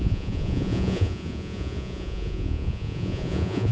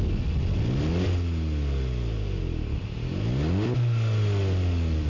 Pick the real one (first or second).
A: second